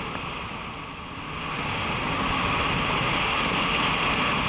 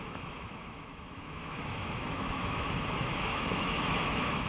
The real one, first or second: first